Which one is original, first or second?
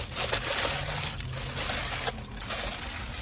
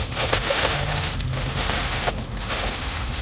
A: first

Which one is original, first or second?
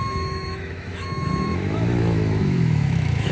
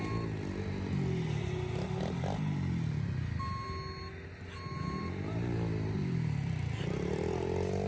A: second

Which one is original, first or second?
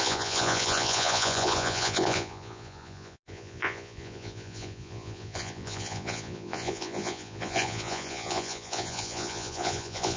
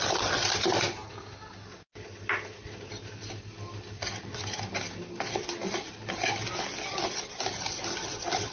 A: second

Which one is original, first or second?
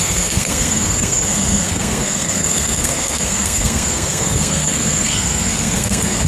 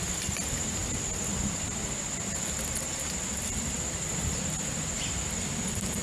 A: second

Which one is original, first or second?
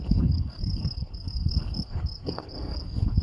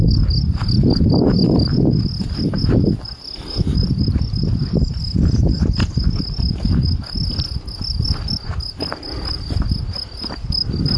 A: second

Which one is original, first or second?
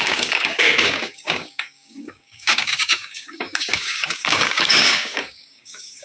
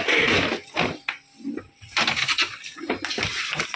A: second